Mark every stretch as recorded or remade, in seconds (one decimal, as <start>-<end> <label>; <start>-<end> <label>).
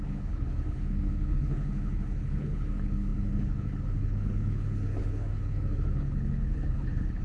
0.0-7.2 remade